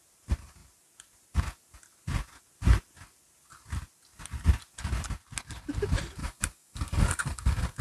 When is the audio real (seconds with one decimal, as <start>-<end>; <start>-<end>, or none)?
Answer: 0.0-6.2